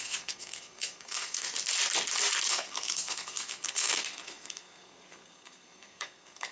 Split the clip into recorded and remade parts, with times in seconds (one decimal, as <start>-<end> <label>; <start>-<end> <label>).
0.0-1.5 remade; 1.5-2.5 recorded; 2.5-6.5 remade